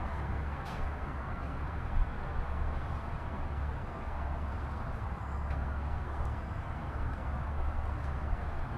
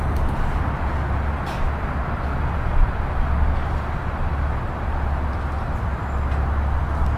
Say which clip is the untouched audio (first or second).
second